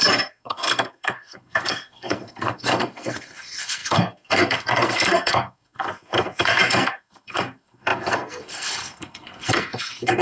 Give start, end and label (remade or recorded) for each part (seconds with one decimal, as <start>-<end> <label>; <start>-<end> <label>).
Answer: 0.0-10.2 remade